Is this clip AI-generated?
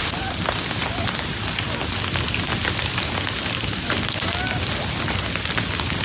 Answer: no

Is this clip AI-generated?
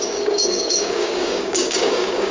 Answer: yes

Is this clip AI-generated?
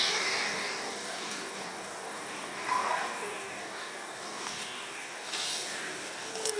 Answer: yes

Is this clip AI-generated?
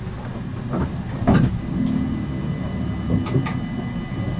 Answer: no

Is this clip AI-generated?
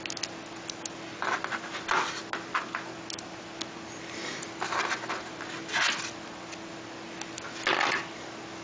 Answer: no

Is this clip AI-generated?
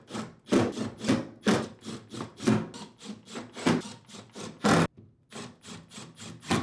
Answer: no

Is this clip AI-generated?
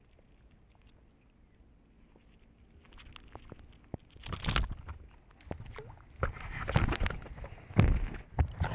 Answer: no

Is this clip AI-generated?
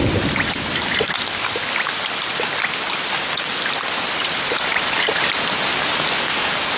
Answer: no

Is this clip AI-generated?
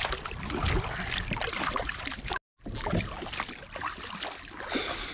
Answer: no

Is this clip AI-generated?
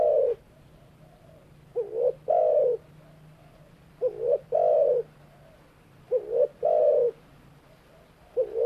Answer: no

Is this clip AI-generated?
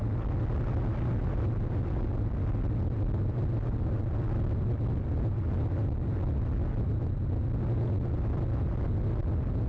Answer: no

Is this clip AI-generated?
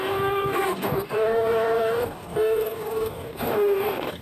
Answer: yes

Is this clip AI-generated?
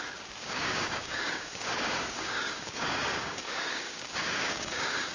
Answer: yes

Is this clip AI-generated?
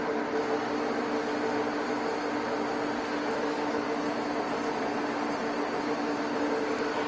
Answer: no